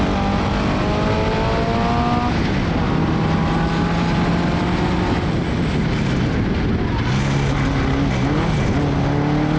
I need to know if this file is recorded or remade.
recorded